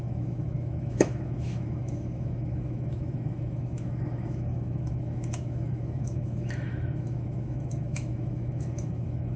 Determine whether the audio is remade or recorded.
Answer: remade